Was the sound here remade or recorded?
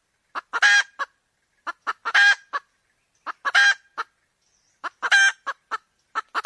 recorded